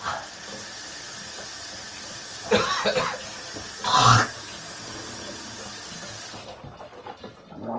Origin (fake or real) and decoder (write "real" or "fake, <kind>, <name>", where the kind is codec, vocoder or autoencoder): real